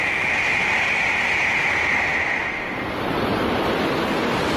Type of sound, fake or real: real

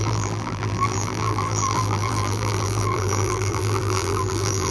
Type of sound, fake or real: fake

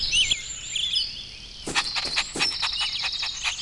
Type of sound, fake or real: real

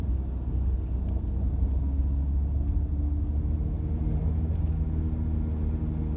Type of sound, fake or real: real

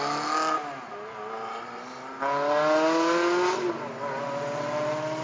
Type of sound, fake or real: real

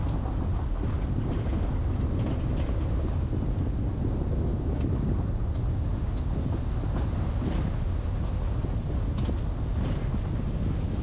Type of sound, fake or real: real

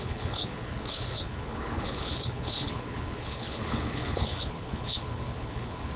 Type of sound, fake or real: fake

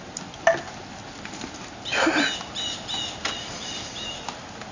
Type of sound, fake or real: real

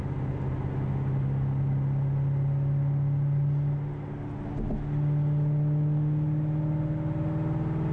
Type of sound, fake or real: real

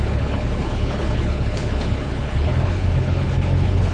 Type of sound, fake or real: fake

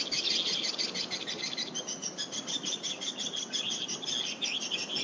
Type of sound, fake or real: real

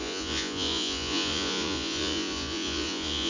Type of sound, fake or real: fake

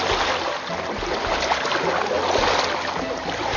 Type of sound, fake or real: real